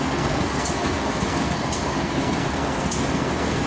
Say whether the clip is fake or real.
fake